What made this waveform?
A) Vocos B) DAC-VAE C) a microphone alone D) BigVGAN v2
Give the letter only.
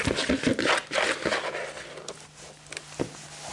C